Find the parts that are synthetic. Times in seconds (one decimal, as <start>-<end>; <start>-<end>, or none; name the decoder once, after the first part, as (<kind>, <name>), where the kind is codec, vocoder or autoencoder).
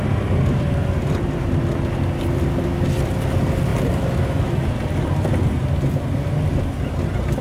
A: none